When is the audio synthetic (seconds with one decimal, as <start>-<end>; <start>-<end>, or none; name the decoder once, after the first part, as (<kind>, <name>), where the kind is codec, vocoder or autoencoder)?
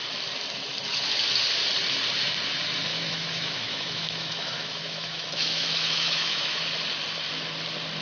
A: 2.9-6.6 (autoencoder, DAC-VAE)